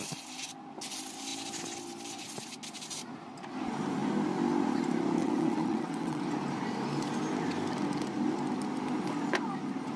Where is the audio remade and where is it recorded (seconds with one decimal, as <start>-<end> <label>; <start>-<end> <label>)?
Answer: 0.0-5.2 recorded; 5.2-6.2 remade; 6.2-10.0 recorded